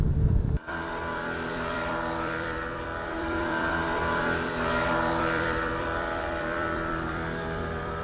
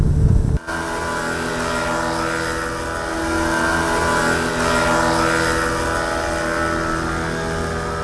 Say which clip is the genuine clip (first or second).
second